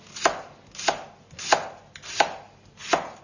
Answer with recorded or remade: recorded